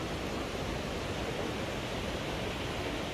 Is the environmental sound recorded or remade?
recorded